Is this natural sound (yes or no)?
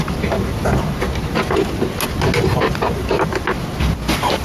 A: yes